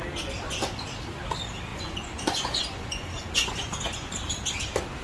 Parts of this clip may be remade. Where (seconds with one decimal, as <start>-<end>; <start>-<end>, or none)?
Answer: 1.7-4.1